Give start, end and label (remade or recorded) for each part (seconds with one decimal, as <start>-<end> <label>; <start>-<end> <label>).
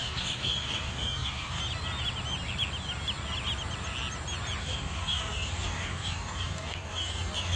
0.0-1.6 remade; 1.6-4.6 recorded; 4.6-7.6 remade